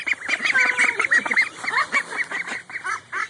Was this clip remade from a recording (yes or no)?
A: no